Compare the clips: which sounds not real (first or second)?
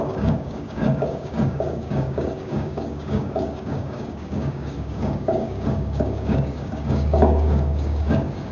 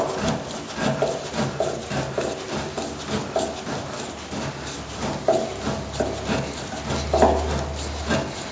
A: first